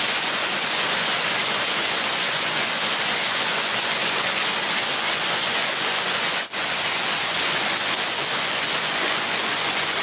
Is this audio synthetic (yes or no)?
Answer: yes